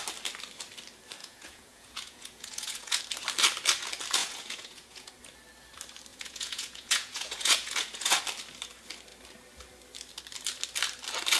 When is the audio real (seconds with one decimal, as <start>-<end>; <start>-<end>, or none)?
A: 0.0-1.2; 3.0-4.2; 5.2-6.1; 8.2-11.4